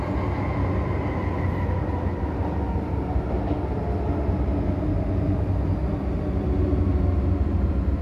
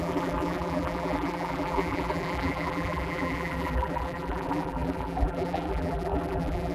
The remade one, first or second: second